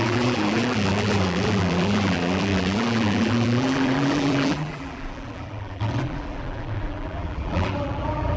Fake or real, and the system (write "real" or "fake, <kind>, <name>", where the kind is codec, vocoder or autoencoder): fake, vocoder, BigVGAN v2